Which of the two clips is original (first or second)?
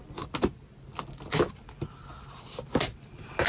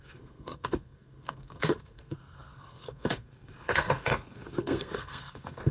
first